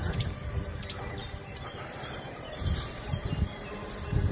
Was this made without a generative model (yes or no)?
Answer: no